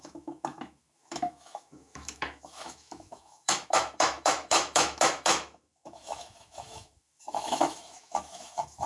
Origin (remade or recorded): remade